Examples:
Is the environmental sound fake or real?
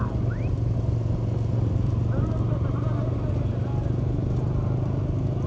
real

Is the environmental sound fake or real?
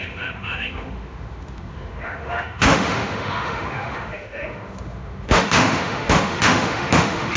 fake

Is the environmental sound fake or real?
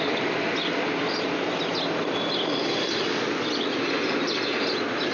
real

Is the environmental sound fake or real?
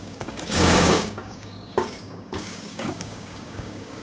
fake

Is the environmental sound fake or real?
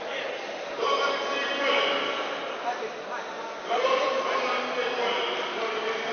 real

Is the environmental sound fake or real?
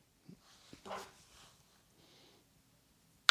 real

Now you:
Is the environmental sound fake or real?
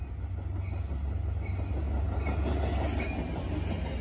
real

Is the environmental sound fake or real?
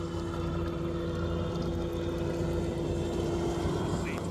real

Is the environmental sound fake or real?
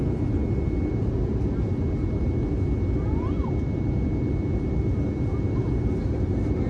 real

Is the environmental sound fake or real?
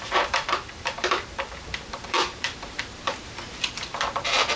fake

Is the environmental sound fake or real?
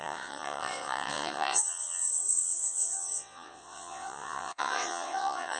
fake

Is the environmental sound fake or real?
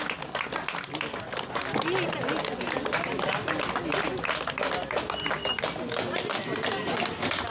real